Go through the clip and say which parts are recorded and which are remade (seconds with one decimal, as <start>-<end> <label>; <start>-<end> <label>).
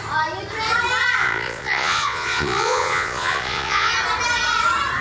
0.0-1.2 recorded; 1.2-3.9 remade; 3.9-5.0 recorded